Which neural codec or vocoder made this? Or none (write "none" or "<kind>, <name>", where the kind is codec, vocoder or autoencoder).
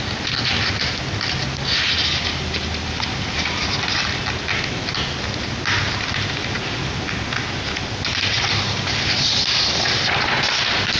none